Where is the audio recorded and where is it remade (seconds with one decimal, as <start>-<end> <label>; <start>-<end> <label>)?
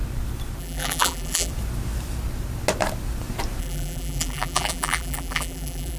0.0-0.6 recorded; 0.6-1.5 remade; 1.5-3.6 recorded; 3.6-6.0 remade